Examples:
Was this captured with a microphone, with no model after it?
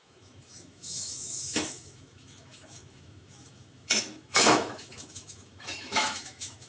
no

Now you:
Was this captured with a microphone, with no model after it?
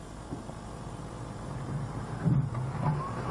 no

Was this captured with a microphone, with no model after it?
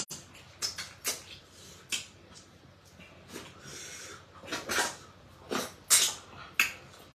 yes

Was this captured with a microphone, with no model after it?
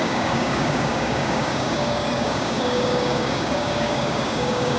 no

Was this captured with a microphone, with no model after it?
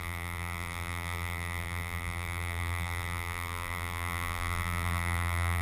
no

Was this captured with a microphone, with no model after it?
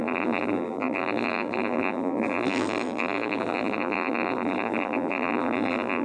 no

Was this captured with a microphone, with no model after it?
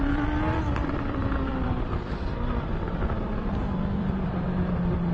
no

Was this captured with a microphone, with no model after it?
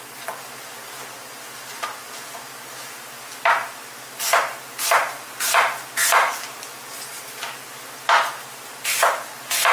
yes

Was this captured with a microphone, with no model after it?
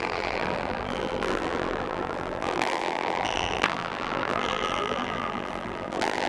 no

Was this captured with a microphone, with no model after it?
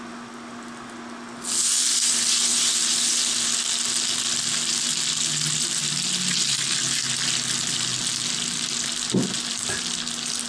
yes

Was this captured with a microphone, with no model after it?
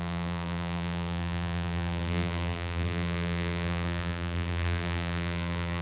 no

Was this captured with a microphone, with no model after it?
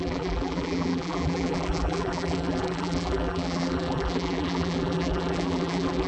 no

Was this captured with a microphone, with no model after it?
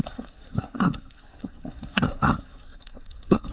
no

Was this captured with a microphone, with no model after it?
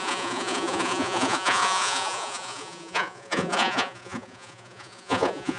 no